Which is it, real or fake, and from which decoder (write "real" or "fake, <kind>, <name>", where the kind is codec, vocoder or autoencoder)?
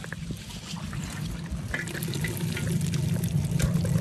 real